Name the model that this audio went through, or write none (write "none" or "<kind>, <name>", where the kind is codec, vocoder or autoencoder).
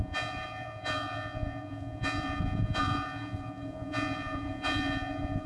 vocoder, Vocos